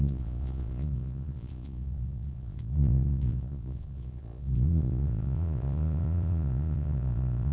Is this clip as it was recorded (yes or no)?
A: no